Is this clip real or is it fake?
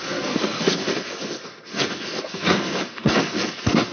fake